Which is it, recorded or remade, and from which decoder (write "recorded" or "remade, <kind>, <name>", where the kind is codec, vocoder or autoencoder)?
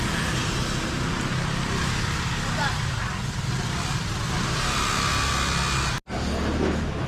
recorded